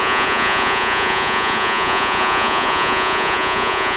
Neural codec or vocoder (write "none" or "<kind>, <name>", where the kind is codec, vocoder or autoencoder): vocoder, Vocos